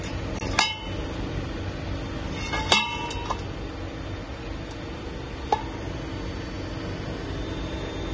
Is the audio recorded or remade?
recorded